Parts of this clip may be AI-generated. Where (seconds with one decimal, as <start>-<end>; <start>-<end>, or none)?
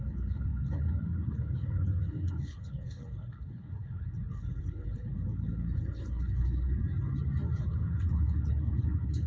0.0-6.8; 7.6-9.3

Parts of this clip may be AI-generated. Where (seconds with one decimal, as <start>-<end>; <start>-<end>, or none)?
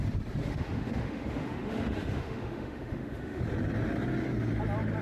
0.4-3.4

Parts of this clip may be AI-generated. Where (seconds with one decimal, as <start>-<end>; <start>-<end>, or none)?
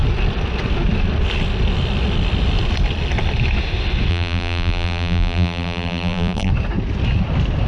4.1-6.5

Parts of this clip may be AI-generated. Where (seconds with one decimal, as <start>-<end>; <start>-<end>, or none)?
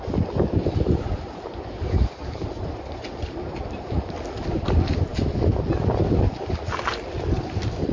none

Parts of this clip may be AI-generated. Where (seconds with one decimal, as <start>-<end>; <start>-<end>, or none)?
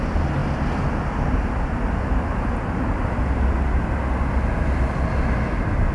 none